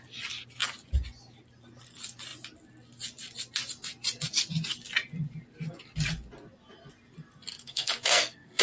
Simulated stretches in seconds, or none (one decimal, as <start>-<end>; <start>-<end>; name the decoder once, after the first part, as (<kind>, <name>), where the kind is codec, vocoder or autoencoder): 7.6-8.6 (codec, SNAC)